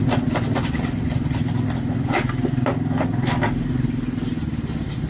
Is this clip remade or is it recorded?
recorded